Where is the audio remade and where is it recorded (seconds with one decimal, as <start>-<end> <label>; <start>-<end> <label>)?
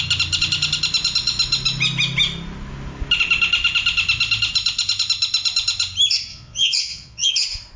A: 0.0-6.3 recorded; 6.3-7.3 remade; 7.3-7.8 recorded